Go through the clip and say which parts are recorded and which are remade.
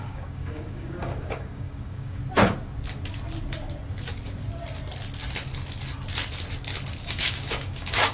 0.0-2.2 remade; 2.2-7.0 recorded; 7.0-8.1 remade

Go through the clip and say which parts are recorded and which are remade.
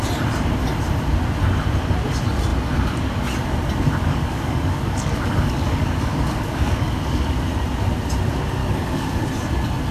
0.0-4.0 recorded; 4.0-7.4 remade; 7.4-8.6 recorded; 8.6-9.3 remade; 9.3-9.9 recorded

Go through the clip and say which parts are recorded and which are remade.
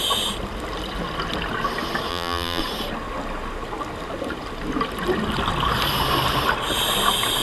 0.0-2.1 recorded; 2.1-2.6 remade; 2.6-7.4 recorded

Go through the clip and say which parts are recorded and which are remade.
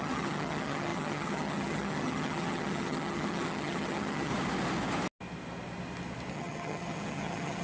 0.0-4.3 remade; 4.3-6.3 recorded; 6.3-7.6 remade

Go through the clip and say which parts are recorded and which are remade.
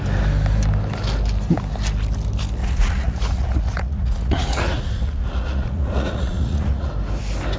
0.0-2.6 recorded; 2.6-6.9 remade; 6.9-7.6 recorded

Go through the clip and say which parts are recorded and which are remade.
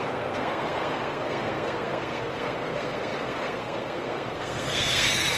0.0-5.4 remade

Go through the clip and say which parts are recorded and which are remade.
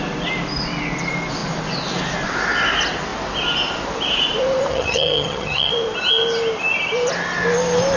0.0-4.7 recorded; 4.7-5.7 remade; 5.7-8.0 recorded